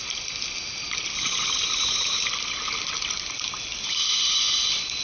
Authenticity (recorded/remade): recorded